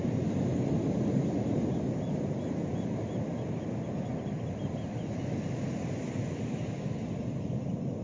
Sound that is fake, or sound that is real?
real